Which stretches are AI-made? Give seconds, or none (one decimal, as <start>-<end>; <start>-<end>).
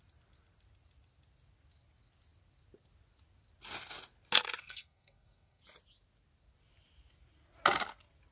4.6-5.6